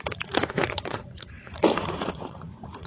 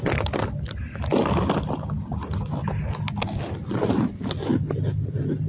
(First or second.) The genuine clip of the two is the second